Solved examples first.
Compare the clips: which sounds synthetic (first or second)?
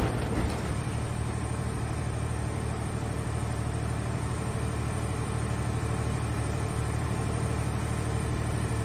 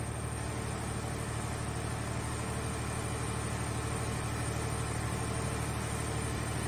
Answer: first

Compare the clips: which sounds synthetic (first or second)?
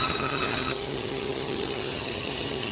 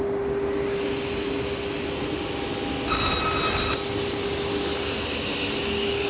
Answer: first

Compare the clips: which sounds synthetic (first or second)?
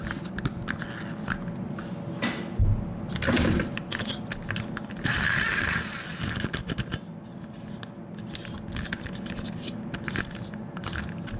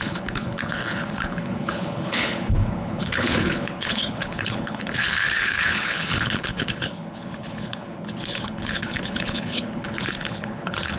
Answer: second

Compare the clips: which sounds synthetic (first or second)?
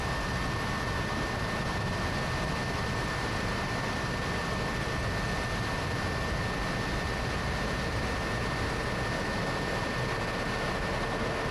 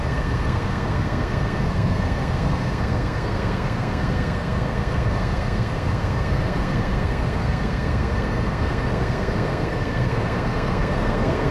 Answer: second